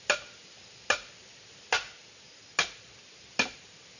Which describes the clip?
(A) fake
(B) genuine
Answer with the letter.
B